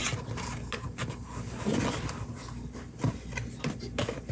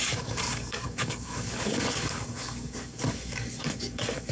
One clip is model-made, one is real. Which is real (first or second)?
first